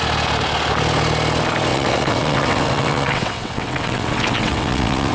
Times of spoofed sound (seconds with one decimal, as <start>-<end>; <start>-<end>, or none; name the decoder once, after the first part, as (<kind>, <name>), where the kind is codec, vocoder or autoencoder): 1.7-5.1 (vocoder, WaveNeXt)